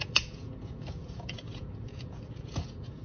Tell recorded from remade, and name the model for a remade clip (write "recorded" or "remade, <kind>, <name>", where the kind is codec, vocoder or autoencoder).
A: remade, vocoder, Vocos